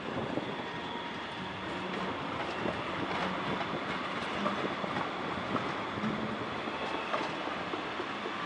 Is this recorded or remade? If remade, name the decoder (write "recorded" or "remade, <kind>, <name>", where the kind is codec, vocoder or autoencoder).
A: recorded